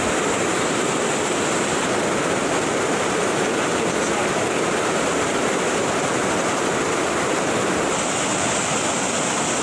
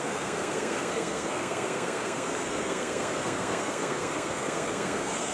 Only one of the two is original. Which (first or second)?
first